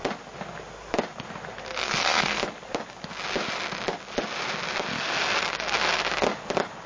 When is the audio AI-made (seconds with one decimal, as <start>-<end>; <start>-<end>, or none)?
1.8-2.4